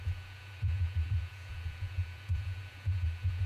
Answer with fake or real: fake